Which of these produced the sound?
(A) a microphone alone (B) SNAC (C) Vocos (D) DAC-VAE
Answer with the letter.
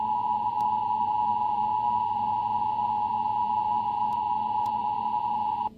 C